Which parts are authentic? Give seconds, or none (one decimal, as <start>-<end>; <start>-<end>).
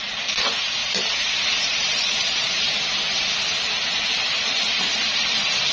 none